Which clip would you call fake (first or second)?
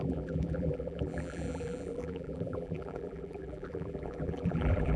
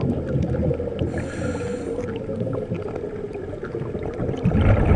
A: first